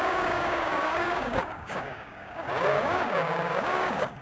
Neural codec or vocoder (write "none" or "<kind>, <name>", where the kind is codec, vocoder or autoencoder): codec, DAC